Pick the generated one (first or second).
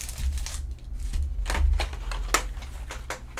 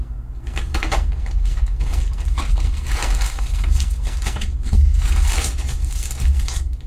second